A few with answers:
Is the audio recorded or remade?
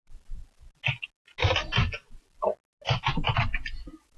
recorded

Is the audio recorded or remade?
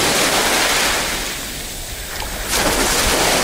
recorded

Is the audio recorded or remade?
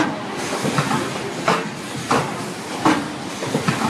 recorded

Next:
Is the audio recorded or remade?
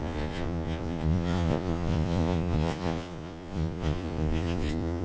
remade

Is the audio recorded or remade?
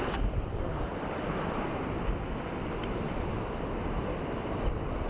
recorded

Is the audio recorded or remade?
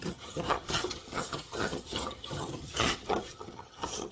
remade